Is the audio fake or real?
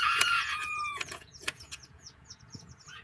fake